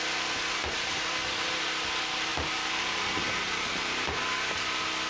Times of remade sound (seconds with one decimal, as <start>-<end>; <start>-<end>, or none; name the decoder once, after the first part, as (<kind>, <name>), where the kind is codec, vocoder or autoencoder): 0.6-1.1 (vocoder, BigVGAN v2); 2.3-4.2